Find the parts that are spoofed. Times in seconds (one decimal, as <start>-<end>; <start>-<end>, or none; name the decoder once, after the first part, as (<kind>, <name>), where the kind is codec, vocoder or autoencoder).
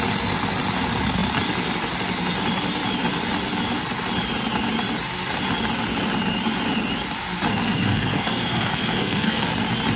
7.5-9.5 (codec, SNAC)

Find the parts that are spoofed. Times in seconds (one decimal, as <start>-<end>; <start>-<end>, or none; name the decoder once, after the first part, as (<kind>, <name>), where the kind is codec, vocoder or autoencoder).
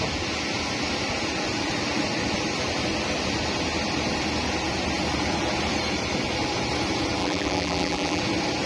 7.2-8.2 (vocoder, BigVGAN v2)